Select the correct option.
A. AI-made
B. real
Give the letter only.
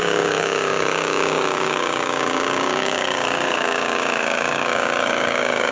A